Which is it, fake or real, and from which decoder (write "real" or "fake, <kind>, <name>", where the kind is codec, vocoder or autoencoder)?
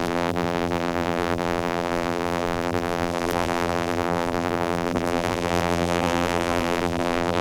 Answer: fake, vocoder, BigVGAN v2